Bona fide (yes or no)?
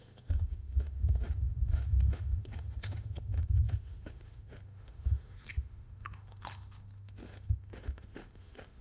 no